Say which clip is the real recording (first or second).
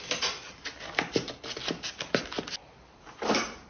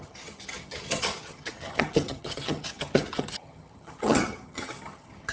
first